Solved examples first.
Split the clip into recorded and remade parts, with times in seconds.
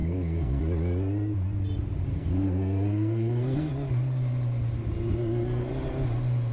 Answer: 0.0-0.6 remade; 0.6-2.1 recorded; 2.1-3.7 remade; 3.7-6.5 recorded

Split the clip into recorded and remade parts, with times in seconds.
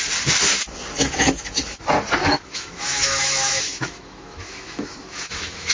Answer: 0.0-1.0 recorded; 1.0-1.8 remade; 1.8-2.2 recorded; 2.2-5.7 remade